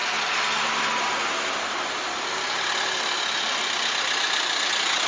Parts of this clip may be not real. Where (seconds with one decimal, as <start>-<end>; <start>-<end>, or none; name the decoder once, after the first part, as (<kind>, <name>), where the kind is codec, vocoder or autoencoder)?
none